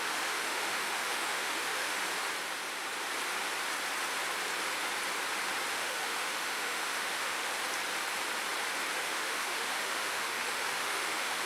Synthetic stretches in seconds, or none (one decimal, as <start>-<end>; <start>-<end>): 0.0-2.0; 5.7-7.5; 9.0-11.5